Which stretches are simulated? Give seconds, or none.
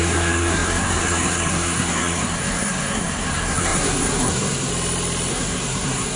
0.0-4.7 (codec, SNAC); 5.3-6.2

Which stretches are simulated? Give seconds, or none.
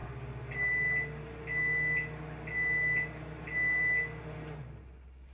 none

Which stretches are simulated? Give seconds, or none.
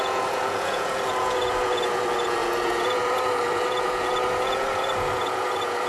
0.0-5.9 (vocoder, Vocos)